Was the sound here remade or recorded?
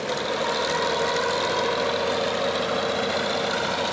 recorded